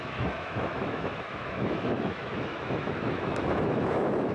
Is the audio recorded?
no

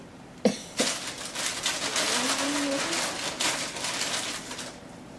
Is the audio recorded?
yes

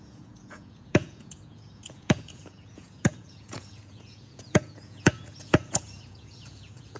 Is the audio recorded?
no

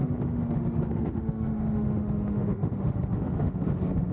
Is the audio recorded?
no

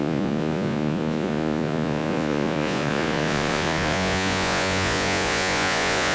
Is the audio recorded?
no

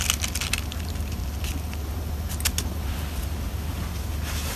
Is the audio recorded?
yes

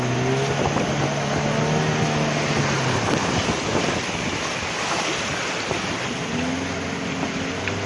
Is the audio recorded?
yes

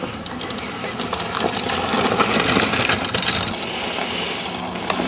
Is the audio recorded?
yes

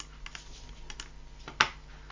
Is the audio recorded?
yes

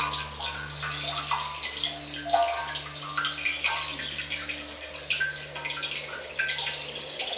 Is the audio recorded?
yes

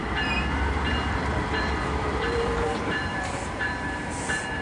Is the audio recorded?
no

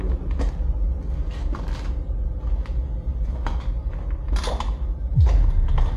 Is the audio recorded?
yes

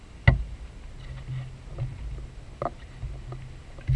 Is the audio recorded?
yes